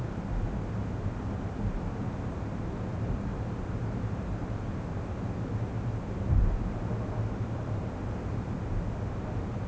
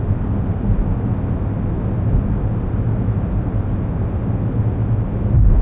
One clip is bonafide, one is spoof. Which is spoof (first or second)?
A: first